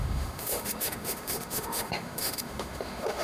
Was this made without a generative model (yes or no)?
no